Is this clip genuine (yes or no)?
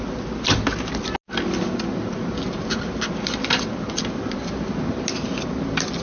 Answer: yes